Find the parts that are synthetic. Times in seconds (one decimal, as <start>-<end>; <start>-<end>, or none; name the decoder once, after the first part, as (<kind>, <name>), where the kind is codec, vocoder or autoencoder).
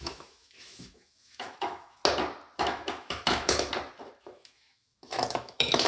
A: 0.0-2.0 (autoencoder, DAC-VAE); 2.6-3.7; 4.2-5.9